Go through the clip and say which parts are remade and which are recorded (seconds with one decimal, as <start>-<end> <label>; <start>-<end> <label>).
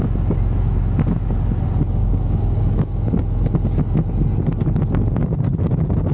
0.0-2.0 recorded; 2.0-3.1 remade; 3.1-6.1 recorded